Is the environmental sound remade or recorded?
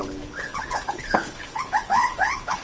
remade